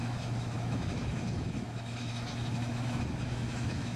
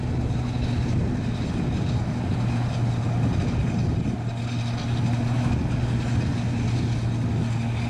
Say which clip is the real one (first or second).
second